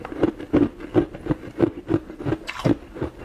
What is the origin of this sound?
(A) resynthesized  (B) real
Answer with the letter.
B